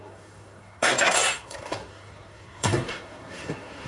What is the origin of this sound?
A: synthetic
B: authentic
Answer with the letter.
A